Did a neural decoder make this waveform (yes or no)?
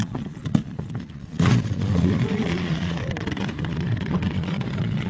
yes